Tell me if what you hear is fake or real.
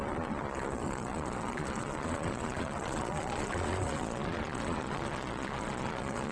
fake